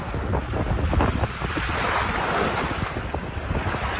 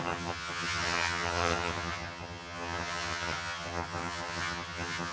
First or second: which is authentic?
first